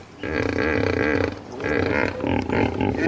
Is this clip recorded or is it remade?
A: recorded